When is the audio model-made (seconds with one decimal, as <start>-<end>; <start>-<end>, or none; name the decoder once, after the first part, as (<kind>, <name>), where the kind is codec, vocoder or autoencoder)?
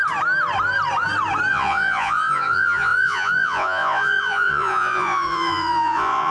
1.5-6.3 (vocoder, Vocos)